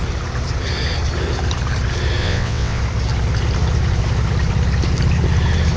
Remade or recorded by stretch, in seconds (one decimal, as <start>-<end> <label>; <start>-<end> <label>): 0.0-2.2 recorded; 2.2-2.8 remade; 2.8-5.8 recorded